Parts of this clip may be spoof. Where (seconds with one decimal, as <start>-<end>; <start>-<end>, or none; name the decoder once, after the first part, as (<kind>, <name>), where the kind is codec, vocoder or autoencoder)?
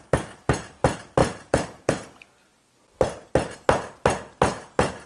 1.2-1.9 (vocoder, BigVGAN v2)